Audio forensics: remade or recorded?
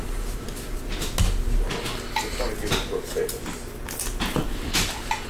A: recorded